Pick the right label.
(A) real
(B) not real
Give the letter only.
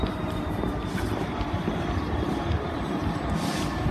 B